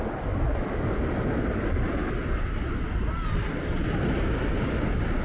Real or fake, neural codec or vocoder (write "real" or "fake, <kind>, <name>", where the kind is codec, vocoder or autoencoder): real